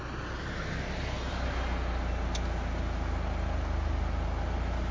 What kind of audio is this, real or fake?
real